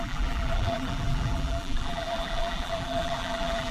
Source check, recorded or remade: remade